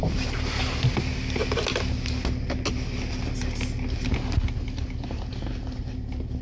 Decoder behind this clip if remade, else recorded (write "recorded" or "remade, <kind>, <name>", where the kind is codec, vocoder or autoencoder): recorded